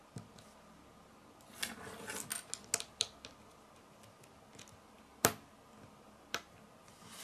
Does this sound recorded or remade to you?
recorded